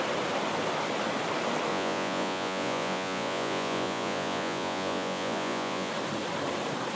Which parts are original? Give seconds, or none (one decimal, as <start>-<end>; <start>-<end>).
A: 0.0-1.7; 5.9-7.0